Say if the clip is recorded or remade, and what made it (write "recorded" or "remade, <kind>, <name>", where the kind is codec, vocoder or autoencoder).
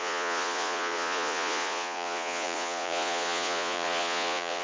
remade, vocoder, Vocos